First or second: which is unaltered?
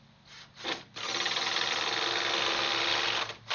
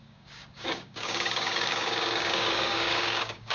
first